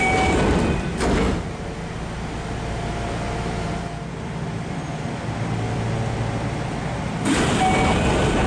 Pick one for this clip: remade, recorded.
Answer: recorded